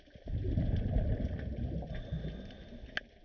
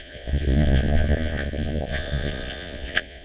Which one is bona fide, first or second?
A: first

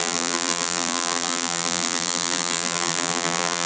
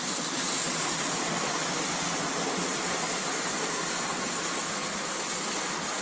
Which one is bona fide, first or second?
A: second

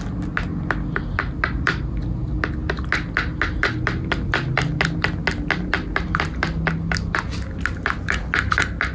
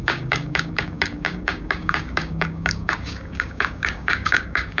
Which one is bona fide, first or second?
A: first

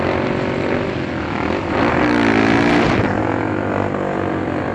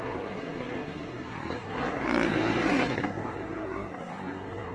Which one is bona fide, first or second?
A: first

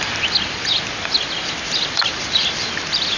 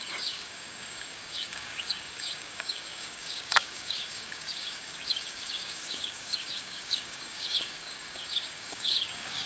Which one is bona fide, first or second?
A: first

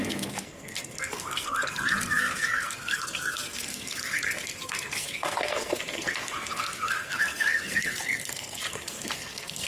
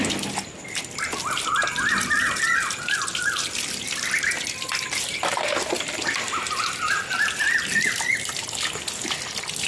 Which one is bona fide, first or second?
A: second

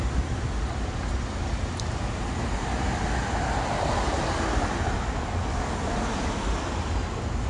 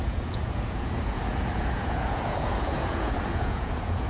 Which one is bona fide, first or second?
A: first